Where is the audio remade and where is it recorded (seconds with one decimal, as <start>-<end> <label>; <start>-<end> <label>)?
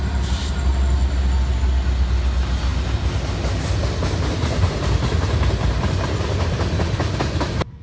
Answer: 0.0-7.8 recorded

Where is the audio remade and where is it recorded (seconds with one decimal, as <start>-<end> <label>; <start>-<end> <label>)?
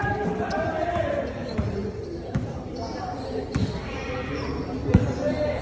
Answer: 0.0-5.6 remade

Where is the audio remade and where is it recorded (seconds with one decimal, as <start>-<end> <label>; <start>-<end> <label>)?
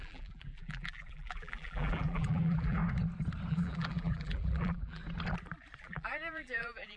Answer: 0.0-2.8 remade; 2.8-3.5 recorded; 3.5-5.0 remade; 5.0-5.8 recorded; 5.8-7.0 remade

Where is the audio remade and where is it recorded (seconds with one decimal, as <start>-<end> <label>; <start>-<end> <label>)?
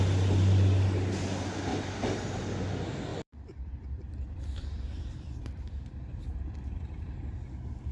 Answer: 0.0-1.7 recorded; 1.7-2.3 remade; 2.3-3.1 recorded; 3.1-5.4 remade; 5.4-7.9 recorded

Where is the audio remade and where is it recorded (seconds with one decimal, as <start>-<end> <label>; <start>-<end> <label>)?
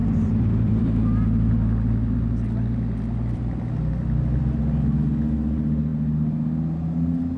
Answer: 0.0-4.4 remade; 4.4-7.4 recorded